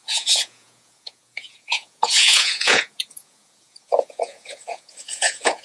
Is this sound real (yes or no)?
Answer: no